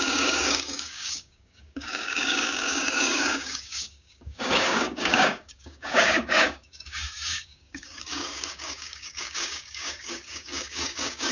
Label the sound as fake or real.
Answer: fake